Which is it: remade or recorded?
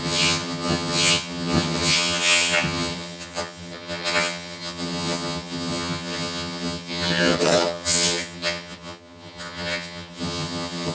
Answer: remade